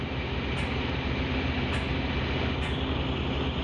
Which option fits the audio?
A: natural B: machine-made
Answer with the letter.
A